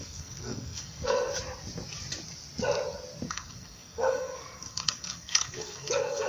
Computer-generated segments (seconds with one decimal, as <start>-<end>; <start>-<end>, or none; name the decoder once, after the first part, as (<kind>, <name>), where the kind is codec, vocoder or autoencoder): 0.0-1.3 (codec, SNAC); 3.3-6.3